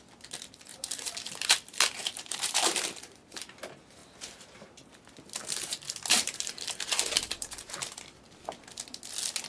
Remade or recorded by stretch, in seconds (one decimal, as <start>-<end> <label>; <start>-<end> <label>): 0.0-0.7 recorded; 0.7-3.2 remade; 3.2-4.0 recorded; 4.0-4.7 remade; 4.7-5.4 recorded; 5.4-8.0 remade; 8.0-9.5 recorded